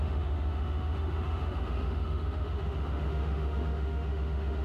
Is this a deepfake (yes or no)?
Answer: yes